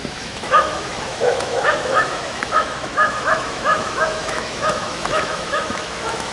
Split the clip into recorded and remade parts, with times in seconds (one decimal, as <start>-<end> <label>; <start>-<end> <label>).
0.0-6.3 remade